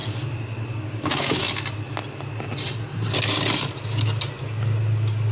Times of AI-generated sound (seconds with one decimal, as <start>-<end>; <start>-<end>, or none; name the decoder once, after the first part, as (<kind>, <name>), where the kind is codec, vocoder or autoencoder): 0.7-1.4 (codec, DAC); 4.4-5.3